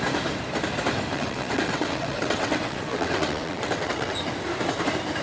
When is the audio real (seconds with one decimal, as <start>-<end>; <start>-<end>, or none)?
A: 0.0-1.1; 4.2-5.2